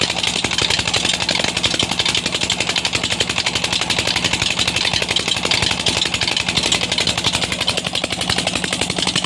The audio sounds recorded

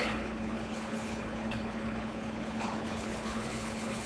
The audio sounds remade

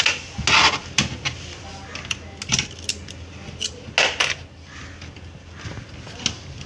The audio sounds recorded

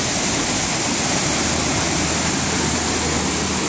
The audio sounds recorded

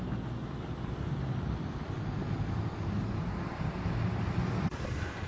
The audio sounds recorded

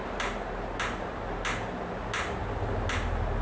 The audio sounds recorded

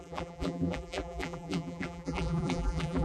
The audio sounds remade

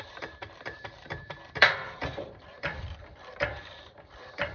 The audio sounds remade